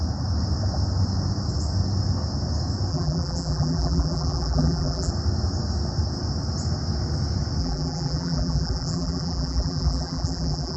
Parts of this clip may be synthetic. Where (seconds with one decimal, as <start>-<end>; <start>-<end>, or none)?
2.9-5.1; 7.6-10.8